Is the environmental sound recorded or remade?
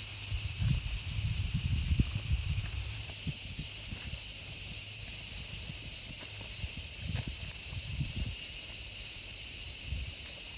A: remade